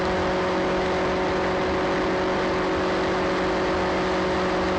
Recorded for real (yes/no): yes